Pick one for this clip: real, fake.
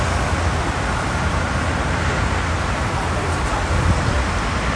fake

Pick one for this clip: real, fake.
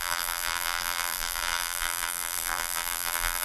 fake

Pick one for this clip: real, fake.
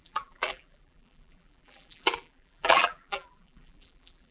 fake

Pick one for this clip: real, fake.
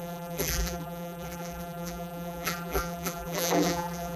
fake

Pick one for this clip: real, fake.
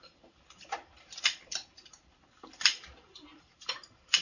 fake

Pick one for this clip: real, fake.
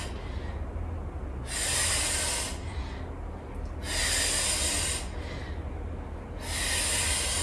real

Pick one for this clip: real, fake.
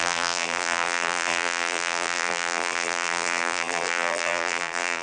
fake